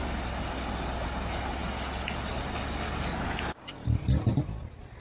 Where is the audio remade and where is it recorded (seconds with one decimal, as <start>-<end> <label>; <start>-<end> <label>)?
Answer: 0.0-5.0 recorded